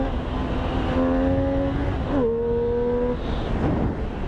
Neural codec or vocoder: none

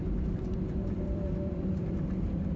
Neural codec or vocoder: vocoder, BigVGAN v2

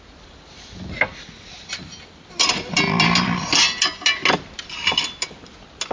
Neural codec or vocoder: none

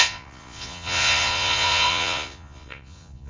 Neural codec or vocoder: vocoder, Vocos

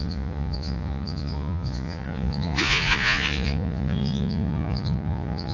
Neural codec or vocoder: vocoder, Vocos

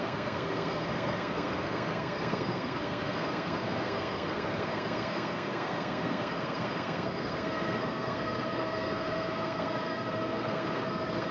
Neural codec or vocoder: codec, SNAC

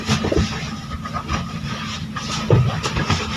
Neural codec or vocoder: vocoder, BigVGAN v2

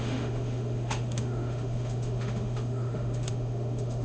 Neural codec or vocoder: autoencoder, DAC-VAE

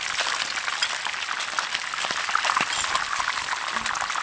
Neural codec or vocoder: none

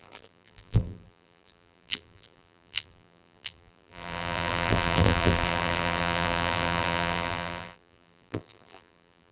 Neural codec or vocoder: vocoder, BigVGAN v2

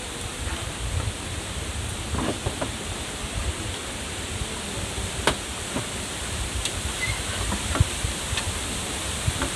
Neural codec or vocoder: vocoder, BigVGAN v2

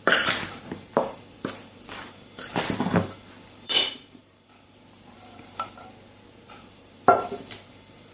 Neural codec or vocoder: vocoder, BigVGAN v2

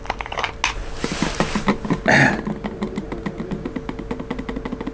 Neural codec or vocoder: none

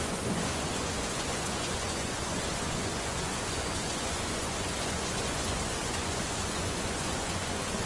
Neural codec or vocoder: vocoder, Vocos